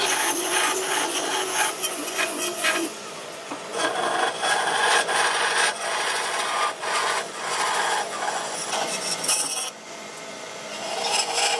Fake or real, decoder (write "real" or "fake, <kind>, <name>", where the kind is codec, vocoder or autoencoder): fake, vocoder, Vocos